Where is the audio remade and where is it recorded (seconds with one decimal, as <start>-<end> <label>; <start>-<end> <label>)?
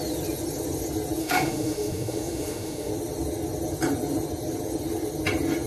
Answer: 0.0-1.2 recorded; 1.2-2.9 remade; 2.9-5.7 recorded